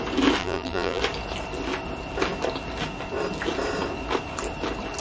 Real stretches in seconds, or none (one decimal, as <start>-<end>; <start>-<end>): 0.0-0.4; 1.0-5.0

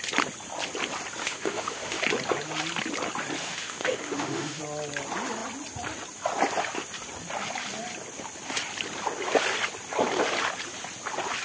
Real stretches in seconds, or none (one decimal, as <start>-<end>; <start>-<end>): 0.0-1.2; 2.0-3.4; 4.6-11.4

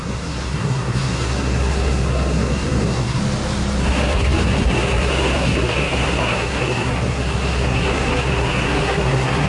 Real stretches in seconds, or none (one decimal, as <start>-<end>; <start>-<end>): 3.2-3.8

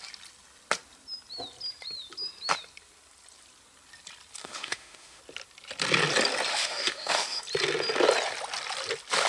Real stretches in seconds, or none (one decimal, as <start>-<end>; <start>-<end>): 0.0-4.4; 5.2-6.5; 7.4-9.3